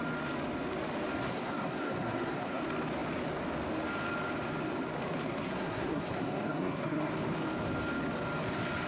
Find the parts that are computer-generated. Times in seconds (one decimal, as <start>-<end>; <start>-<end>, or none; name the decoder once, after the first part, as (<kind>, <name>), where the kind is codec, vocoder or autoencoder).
1.3-2.6 (codec, SNAC); 5.2-7.1